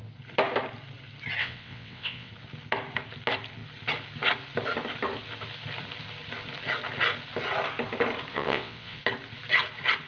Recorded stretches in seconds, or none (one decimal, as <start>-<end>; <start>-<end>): 0.0-1.4; 2.3-8.3; 9.0-10.1